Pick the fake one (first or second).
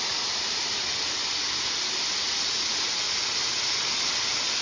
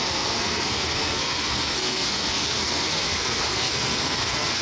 second